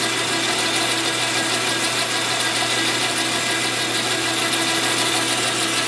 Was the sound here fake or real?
real